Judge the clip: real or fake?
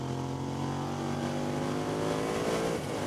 real